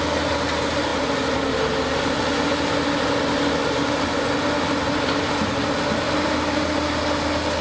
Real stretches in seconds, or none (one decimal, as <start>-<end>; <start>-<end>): 0.0-7.6